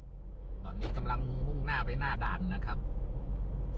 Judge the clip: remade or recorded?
remade